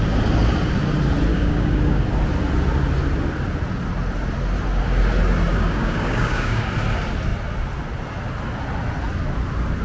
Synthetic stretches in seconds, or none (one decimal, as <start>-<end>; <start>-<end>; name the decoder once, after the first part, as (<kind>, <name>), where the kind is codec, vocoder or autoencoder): 1.3-2.0 (codec, DAC); 5.5-6.7